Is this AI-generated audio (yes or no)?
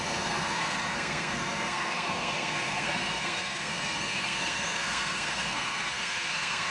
yes